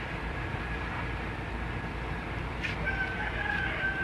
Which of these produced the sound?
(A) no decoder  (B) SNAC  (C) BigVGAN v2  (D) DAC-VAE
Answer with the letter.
C